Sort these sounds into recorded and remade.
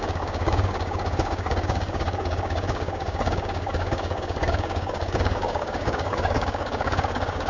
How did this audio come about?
remade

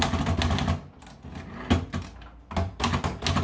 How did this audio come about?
recorded